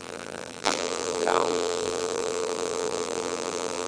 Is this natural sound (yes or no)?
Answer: no